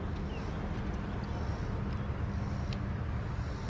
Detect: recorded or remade recorded